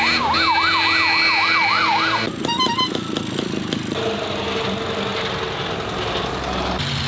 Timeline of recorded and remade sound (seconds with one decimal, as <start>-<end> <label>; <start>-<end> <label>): 0.0-7.1 recorded

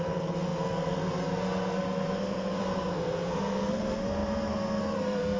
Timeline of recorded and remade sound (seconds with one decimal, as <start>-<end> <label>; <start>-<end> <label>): 0.0-5.4 remade

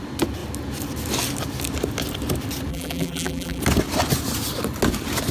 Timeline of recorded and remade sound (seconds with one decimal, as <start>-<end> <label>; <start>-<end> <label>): 0.0-2.7 recorded; 2.7-3.6 remade; 3.6-5.3 recorded

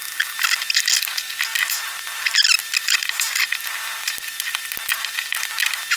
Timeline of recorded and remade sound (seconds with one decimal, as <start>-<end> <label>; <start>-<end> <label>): 0.0-6.0 recorded

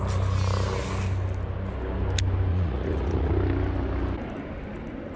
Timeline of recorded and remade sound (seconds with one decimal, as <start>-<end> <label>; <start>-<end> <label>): 0.0-2.5 recorded; 2.5-3.3 remade; 3.3-5.2 recorded

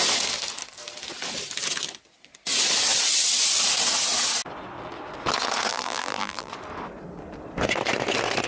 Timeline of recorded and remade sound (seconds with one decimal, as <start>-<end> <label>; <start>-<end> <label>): 0.0-5.7 recorded; 5.7-6.5 remade; 6.5-8.5 recorded

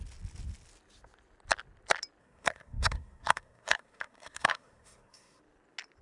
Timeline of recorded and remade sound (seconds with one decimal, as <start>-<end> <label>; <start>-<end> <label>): 0.0-2.2 recorded; 2.2-5.4 remade; 5.4-6.0 recorded